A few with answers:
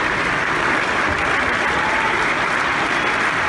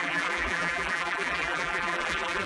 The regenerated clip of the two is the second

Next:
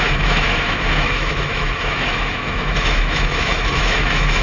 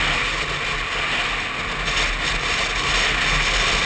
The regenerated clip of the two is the first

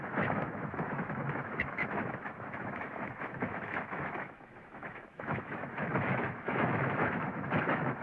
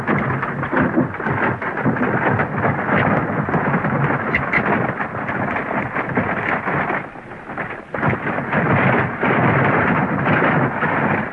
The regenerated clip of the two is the first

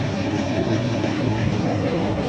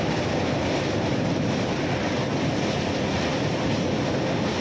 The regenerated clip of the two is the first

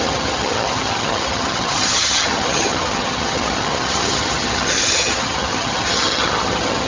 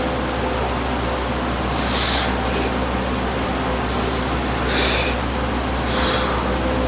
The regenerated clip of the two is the first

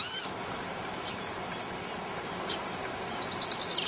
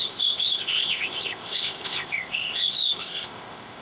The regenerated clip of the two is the second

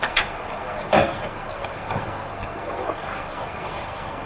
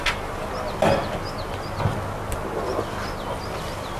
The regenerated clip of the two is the first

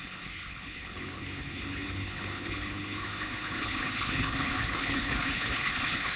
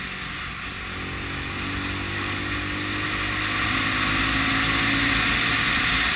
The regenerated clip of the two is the first